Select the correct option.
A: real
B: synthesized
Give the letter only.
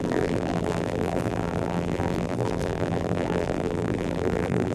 B